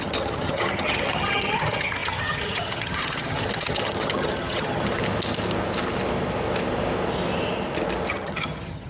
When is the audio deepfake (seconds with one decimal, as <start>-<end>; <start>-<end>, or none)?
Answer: 0.0-5.0; 8.1-8.9